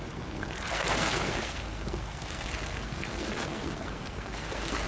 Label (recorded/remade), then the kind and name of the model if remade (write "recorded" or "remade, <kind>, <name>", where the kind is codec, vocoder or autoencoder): remade, codec, SNAC